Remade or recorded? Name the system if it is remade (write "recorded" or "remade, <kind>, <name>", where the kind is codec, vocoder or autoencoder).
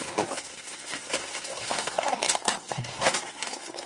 remade, codec, SNAC